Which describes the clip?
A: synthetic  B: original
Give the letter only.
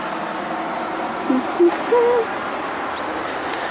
B